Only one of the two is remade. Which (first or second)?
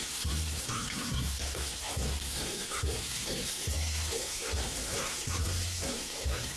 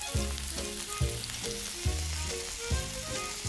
first